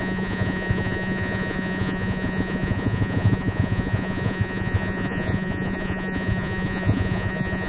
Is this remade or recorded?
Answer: remade